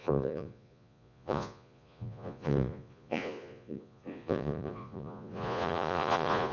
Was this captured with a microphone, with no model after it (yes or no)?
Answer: no